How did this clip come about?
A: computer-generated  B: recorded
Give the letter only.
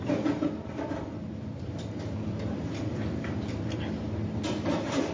A